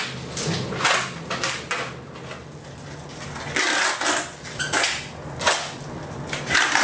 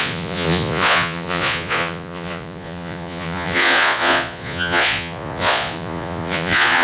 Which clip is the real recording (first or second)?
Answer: first